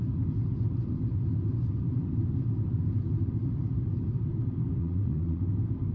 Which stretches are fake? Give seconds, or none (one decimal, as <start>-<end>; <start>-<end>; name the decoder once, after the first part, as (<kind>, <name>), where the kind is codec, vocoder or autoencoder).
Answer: 4.8-5.4 (vocoder, Vocos)